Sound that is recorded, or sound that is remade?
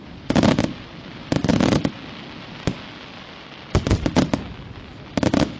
recorded